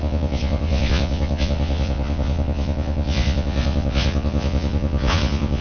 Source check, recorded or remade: remade